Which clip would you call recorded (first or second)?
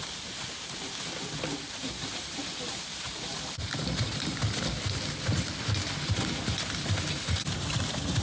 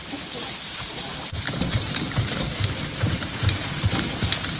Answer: first